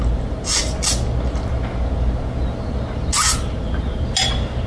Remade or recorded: recorded